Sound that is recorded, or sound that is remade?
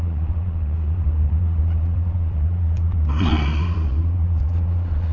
remade